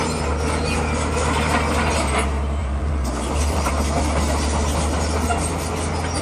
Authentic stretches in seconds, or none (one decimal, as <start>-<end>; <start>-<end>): 0.0-2.6; 3.7-6.2

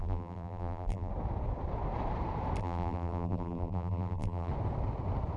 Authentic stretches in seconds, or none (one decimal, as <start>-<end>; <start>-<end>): 1.1-2.6; 4.5-5.4